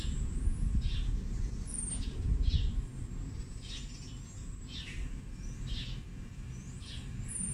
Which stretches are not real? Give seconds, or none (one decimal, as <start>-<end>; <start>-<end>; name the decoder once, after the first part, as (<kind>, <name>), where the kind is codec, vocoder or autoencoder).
none